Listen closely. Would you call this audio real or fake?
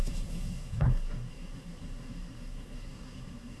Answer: fake